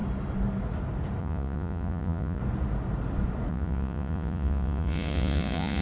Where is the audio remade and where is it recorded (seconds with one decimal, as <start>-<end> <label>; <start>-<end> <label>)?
0.0-1.2 recorded; 1.2-2.4 remade; 2.4-3.5 recorded; 3.5-5.8 remade